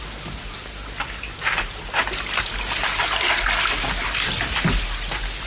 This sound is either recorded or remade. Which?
recorded